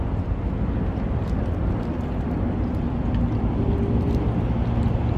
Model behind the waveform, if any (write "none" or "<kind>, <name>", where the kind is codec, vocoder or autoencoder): none